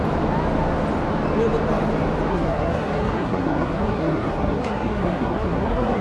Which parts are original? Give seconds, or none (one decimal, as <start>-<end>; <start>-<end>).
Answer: 0.0-2.3